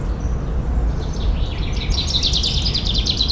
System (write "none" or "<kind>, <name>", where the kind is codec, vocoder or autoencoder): none